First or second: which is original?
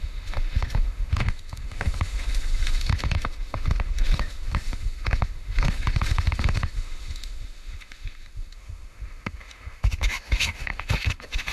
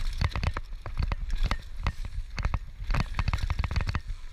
second